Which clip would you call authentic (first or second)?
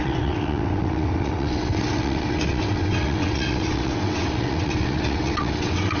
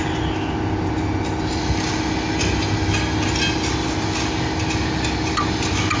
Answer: second